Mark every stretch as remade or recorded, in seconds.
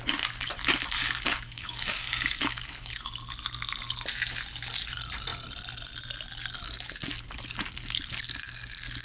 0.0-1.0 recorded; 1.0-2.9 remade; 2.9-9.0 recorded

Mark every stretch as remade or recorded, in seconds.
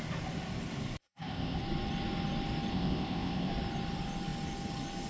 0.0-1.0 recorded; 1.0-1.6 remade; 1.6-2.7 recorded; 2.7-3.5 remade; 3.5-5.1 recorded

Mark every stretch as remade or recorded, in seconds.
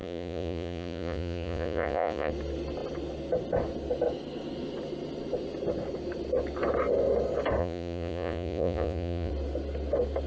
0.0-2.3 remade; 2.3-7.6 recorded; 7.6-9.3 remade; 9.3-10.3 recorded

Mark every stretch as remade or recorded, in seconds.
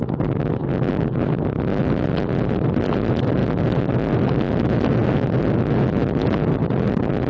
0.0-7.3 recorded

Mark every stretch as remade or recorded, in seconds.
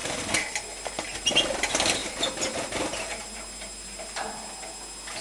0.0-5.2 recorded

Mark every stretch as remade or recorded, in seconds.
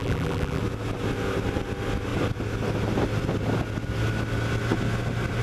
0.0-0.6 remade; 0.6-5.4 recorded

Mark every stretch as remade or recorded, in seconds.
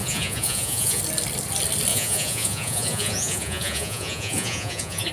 0.0-1.0 remade; 1.0-1.9 recorded; 1.9-5.1 remade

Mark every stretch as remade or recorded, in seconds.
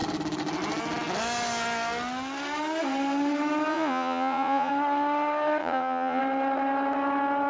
0.0-3.7 recorded; 3.7-4.7 remade; 4.7-5.6 recorded; 5.6-6.2 remade; 6.2-7.5 recorded